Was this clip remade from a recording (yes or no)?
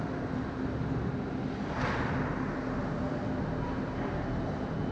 no